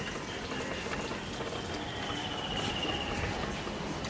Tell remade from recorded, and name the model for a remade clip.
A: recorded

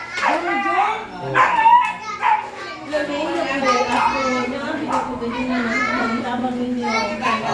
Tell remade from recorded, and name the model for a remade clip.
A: recorded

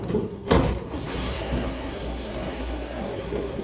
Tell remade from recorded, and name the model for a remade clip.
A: remade, codec, SNAC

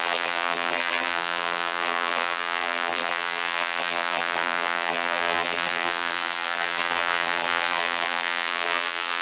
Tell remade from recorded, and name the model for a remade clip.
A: remade, vocoder, BigVGAN v2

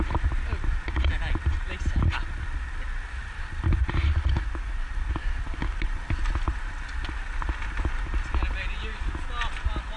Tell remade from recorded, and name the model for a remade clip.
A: recorded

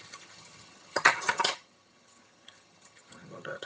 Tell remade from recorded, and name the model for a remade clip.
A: remade, vocoder, HiFi-GAN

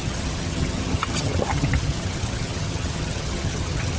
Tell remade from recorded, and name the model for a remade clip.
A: remade, vocoder, HiFi-GAN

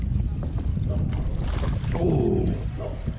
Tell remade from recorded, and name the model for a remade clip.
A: recorded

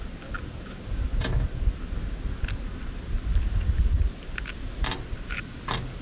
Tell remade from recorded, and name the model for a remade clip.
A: recorded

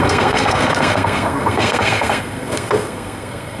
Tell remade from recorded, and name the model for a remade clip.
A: remade, codec, SNAC